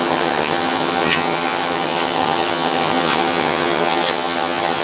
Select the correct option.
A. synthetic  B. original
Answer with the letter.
A